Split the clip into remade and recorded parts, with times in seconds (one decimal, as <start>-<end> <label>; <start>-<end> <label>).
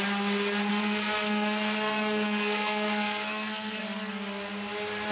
0.0-0.7 recorded; 0.7-3.8 remade; 3.8-5.1 recorded